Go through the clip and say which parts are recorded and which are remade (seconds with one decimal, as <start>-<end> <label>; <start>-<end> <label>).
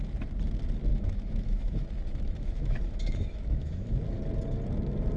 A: 0.0-0.9 recorded; 0.9-4.0 remade; 4.0-5.2 recorded